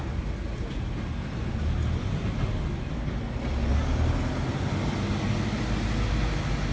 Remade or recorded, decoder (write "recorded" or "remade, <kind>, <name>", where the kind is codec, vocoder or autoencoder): recorded